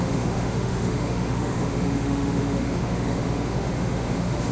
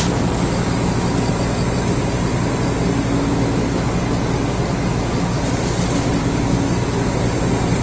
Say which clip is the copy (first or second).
first